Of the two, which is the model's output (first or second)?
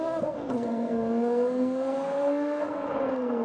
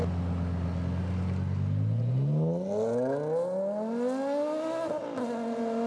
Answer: first